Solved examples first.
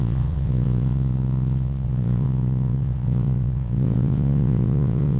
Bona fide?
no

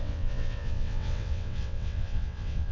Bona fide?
no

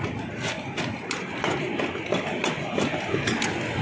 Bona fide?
yes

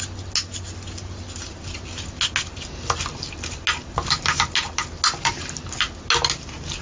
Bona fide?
yes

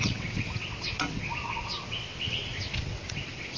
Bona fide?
no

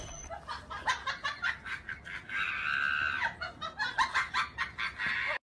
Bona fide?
yes